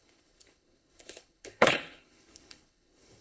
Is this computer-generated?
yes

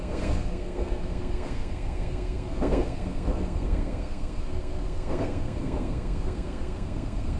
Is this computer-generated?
yes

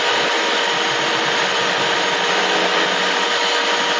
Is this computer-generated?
no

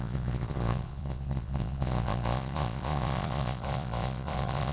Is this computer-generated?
yes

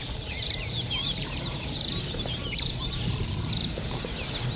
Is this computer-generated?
yes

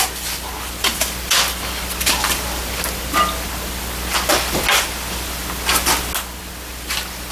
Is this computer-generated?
no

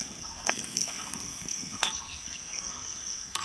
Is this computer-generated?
yes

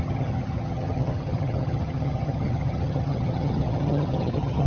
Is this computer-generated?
yes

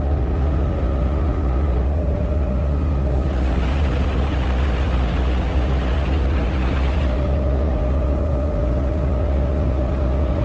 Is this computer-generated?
yes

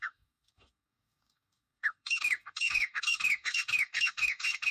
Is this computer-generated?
yes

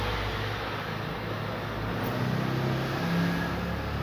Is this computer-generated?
no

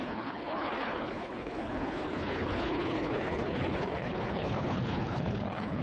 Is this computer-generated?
yes